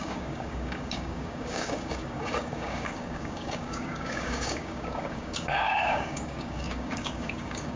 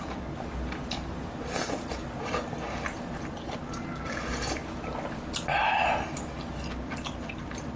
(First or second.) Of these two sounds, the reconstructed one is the first